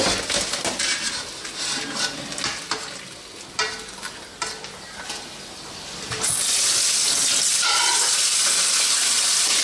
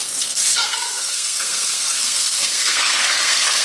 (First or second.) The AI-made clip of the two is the second